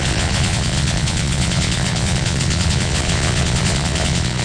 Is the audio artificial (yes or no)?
yes